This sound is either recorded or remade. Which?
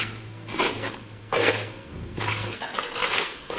remade